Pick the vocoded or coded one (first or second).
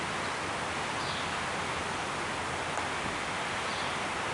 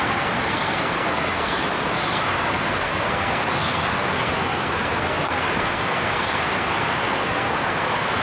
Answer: second